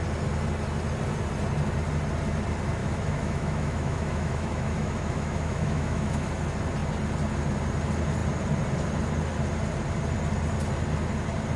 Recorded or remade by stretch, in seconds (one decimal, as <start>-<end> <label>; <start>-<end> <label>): 0.0-2.8 recorded; 2.8-6.3 remade; 6.3-11.6 recorded